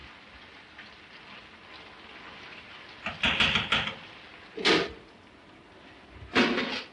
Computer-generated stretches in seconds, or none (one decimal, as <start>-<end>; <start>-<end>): none